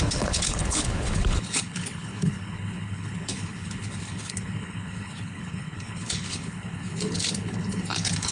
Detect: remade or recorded remade